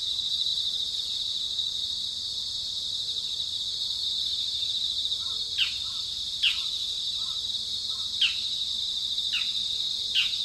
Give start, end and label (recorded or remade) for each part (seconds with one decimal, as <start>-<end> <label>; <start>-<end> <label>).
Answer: 0.0-10.4 recorded